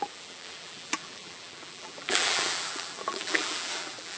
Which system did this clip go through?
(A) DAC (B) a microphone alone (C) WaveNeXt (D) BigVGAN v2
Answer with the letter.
D